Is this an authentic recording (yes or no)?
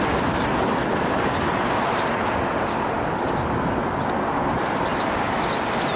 yes